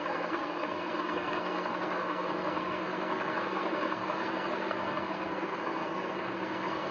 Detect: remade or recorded remade